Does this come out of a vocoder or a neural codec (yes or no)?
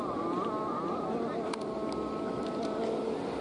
no